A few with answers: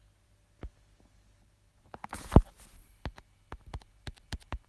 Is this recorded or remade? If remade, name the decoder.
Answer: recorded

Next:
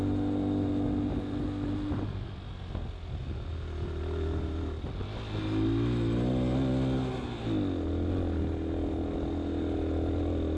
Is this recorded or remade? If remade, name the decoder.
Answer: recorded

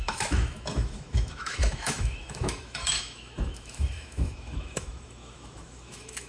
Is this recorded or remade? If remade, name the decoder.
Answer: remade, autoencoder, DAC-VAE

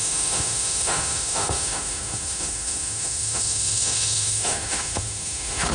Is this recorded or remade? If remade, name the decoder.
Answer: remade, autoencoder, DAC-VAE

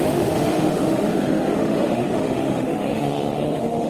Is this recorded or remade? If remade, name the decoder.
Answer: remade, autoencoder, DAC-VAE